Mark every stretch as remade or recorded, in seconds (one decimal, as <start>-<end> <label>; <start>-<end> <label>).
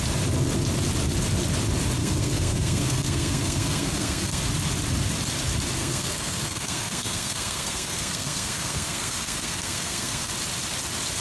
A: 0.0-2.0 recorded; 2.0-4.4 remade; 4.4-5.8 recorded; 5.8-10.3 remade; 10.3-11.2 recorded